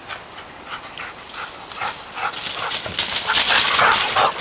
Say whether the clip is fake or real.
real